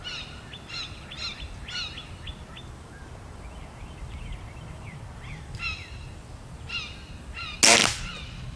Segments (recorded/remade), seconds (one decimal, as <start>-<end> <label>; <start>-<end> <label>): 0.0-8.6 recorded